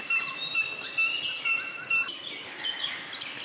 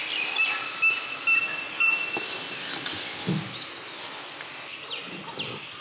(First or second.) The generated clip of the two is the first